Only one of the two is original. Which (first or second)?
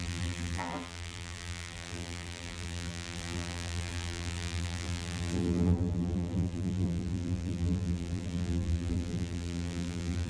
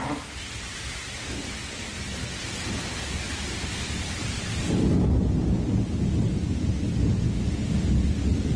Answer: second